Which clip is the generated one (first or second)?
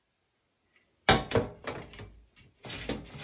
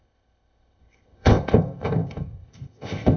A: second